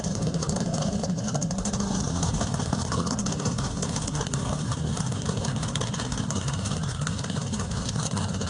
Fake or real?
fake